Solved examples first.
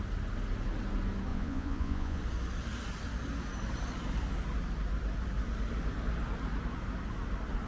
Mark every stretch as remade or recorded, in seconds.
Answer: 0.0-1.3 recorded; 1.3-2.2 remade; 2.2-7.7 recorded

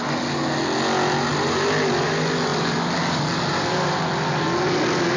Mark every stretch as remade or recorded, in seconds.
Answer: 0.0-2.5 recorded; 2.5-4.7 remade; 4.7-5.2 recorded